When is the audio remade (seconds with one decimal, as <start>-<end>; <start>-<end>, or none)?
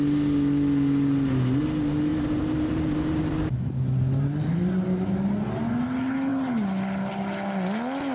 2.1-5.1